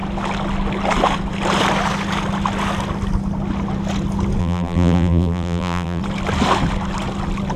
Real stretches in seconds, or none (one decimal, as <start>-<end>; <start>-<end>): 0.0-4.4; 6.0-7.6